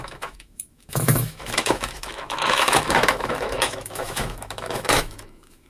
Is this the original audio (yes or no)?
no